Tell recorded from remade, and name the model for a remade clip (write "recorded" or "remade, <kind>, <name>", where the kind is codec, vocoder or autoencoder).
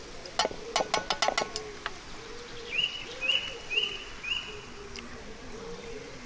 recorded